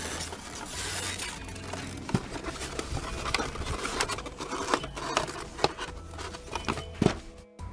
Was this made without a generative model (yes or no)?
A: yes